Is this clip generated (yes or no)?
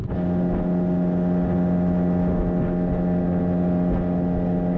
no